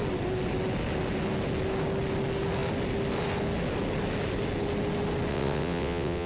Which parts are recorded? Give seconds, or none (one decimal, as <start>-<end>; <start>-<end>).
0.0-5.3